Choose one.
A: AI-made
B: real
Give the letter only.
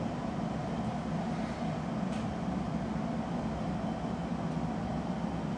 B